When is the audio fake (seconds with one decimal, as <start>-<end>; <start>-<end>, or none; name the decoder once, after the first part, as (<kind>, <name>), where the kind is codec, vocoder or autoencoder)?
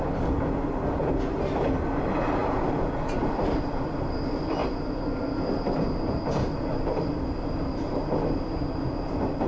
none